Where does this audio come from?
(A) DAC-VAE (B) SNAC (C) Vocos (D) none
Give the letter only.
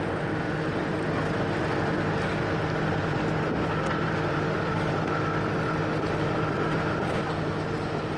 D